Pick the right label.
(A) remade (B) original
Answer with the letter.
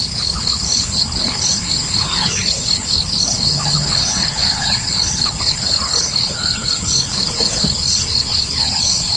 A